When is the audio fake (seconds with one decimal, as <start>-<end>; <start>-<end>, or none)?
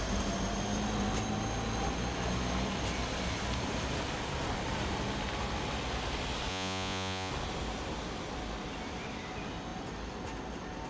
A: 6.5-7.3